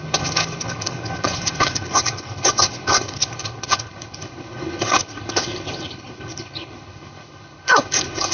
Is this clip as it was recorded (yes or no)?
no